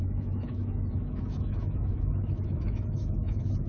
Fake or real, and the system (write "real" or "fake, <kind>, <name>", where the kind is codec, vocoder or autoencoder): fake, autoencoder, DAC-VAE